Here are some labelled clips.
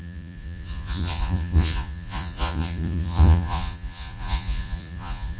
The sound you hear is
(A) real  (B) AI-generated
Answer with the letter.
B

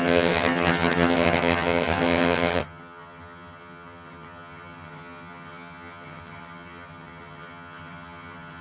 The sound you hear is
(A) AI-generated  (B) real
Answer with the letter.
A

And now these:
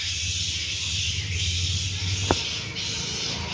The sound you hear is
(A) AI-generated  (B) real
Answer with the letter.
B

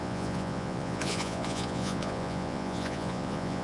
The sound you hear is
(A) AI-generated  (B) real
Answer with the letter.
A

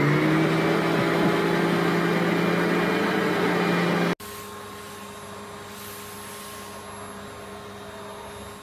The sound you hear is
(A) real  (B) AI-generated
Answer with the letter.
A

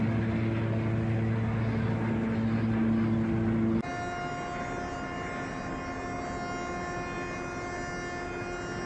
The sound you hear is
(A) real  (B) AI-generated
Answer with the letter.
A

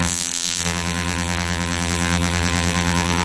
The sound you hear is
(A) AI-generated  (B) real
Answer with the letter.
A